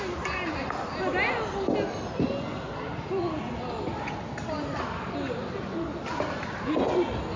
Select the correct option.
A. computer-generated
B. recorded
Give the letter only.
B